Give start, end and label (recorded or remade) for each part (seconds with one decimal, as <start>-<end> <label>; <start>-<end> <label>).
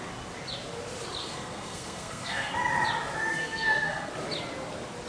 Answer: 0.0-1.2 recorded; 1.2-2.5 remade; 2.5-3.4 recorded; 3.4-4.1 remade; 4.1-5.1 recorded